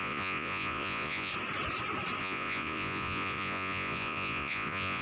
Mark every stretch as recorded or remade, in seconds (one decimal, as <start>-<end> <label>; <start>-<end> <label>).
0.0-1.3 remade; 1.3-2.2 recorded; 2.2-5.0 remade